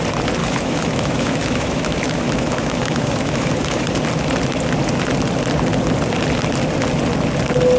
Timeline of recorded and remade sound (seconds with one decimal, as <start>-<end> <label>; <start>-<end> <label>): 0.0-0.4 recorded; 0.4-4.0 remade; 4.0-7.8 recorded